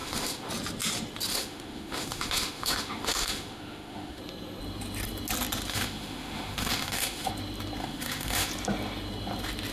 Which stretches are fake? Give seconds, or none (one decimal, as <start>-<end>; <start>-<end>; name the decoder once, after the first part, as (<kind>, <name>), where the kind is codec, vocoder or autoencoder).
0.0-0.5 (autoencoder, DAC-VAE); 1.3-4.2; 5.7-7.3; 7.8-8.5